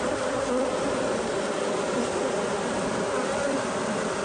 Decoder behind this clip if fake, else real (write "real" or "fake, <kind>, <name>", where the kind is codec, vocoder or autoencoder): real